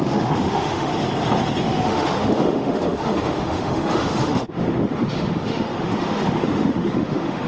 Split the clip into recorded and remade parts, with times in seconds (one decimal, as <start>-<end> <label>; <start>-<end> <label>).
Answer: 0.0-0.9 remade; 0.9-1.6 recorded; 1.6-7.5 remade